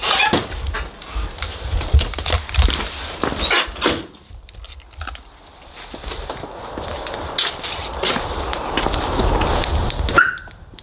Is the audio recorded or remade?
recorded